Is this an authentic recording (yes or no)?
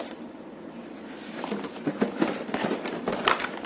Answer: no